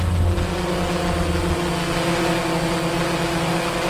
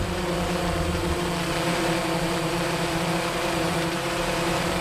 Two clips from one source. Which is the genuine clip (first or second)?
first